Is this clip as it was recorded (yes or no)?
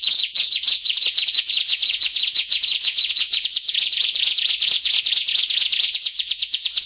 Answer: no